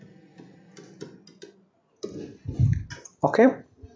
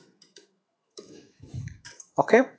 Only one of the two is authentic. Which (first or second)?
first